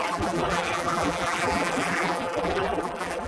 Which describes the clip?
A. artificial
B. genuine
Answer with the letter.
A